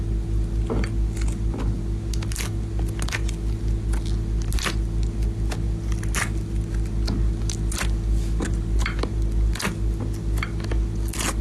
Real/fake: real